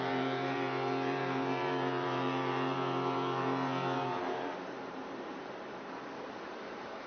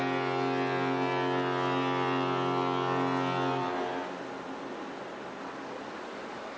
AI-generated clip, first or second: first